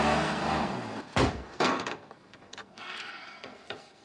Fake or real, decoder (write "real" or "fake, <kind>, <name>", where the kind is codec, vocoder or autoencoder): fake, codec, SNAC